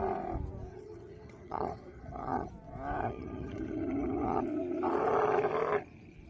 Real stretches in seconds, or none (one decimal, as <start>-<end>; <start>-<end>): 0.0-0.7; 2.5-3.0; 4.4-6.3